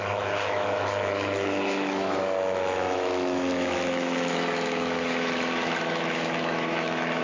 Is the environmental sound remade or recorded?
remade